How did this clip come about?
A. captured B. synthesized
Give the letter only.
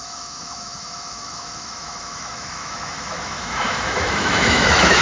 B